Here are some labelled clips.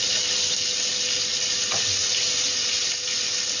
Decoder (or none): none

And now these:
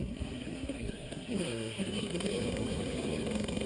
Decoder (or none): codec, SNAC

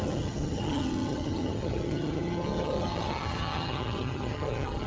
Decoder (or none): vocoder, HiFi-GAN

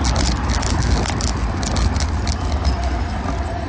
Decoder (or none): none